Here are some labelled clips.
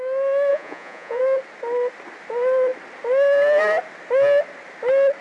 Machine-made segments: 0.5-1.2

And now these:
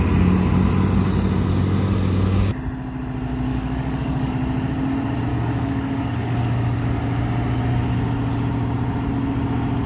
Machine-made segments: 3.5-4.3; 5.3-7.0

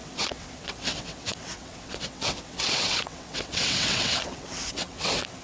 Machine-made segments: 0.0-5.4

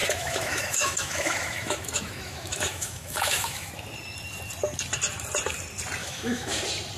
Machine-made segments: 0.0-3.7; 6.0-6.6

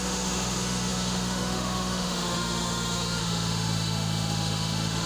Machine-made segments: 0.0-5.1

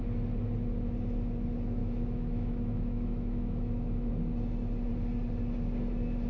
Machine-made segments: 1.8-4.1

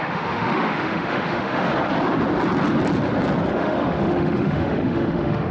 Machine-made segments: 0.0-1.7; 3.5-5.5